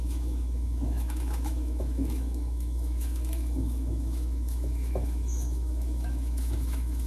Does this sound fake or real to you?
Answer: fake